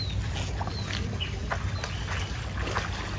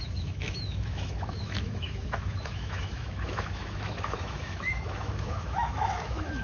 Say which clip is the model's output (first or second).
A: second